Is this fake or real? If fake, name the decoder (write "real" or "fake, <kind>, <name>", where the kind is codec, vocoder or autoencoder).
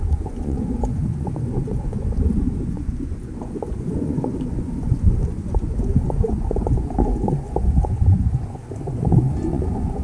fake, vocoder, Vocos